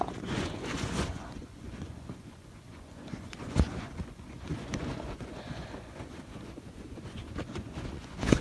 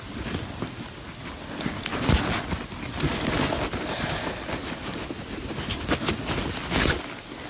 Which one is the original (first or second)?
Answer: second